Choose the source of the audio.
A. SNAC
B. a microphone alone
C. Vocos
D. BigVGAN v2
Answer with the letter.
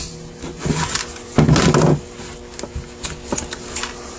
B